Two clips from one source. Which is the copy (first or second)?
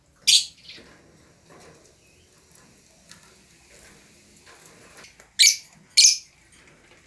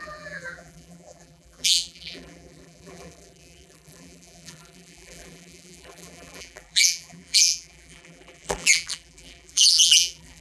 second